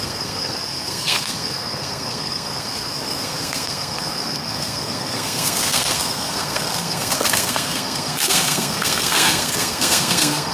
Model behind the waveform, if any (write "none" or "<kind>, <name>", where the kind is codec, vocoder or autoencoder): codec, SNAC